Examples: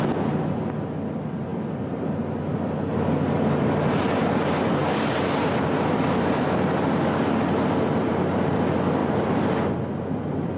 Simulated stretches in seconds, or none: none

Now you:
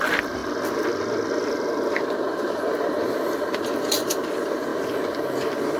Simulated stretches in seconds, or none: 0.0-0.4 (vocoder, BigVGAN v2); 2.9-4.7

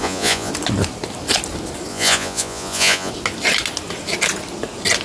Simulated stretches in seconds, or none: 0.0-0.5 (vocoder, Vocos); 1.9-3.1

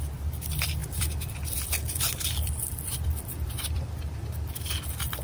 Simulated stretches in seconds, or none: 0.8-3.9 (vocoder, BigVGAN v2)

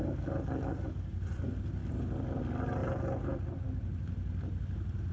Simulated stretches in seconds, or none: none

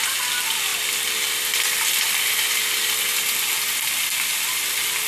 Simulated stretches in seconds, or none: none

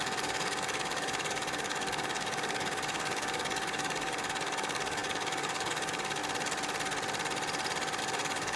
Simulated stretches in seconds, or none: 0.0-6.2 (codec, DAC); 8.0-8.6

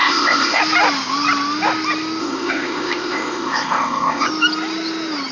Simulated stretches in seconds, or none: 0.0-0.6 (codec, ZipCodec); 2.2-4.3